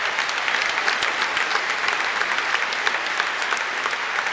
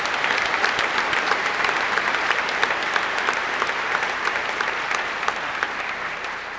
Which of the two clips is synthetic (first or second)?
second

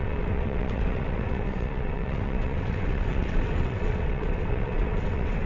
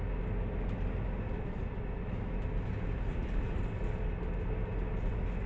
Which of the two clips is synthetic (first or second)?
first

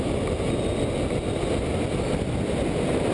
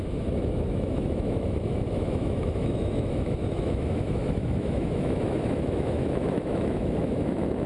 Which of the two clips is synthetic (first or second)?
second